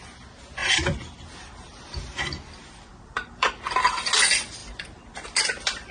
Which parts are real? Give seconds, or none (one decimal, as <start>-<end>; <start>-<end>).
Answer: 0.0-0.6; 2.0-2.6; 3.5-4.6